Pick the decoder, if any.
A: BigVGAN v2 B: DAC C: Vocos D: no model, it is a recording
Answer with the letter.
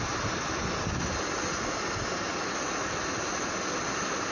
D